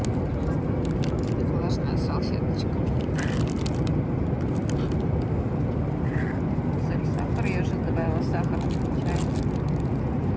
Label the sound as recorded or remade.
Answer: recorded